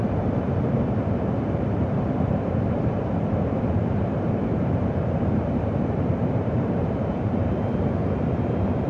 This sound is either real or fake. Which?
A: fake